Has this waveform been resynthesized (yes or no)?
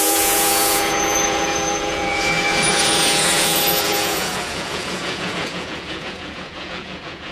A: yes